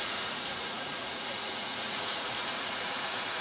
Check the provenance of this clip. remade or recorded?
remade